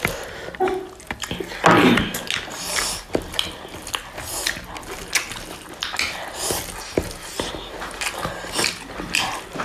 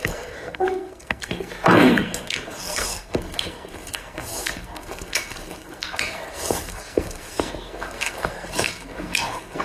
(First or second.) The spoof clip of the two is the second